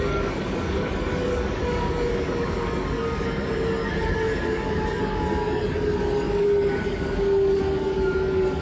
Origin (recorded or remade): remade